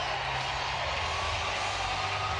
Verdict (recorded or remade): recorded